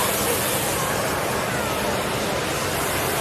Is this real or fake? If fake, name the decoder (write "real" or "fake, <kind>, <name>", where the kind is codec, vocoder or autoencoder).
fake, vocoder, BigVGAN v2